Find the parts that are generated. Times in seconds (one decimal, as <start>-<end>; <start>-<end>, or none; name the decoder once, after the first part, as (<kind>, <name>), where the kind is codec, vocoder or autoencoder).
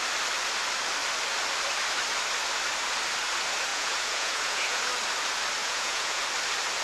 3.7-4.8 (vocoder, Vocos); 5.6-6.2